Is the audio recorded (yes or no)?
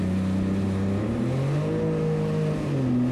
yes